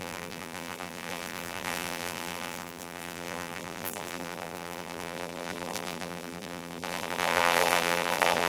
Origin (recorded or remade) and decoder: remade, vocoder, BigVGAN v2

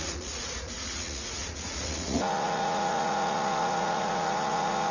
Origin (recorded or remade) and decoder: remade, vocoder, Vocos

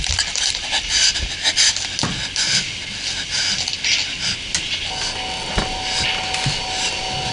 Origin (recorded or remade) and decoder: recorded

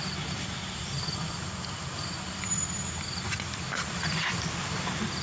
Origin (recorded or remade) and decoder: recorded